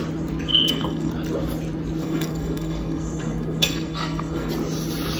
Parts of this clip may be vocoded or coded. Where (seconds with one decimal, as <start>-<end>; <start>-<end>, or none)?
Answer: 0.5-1.1; 2.0-4.5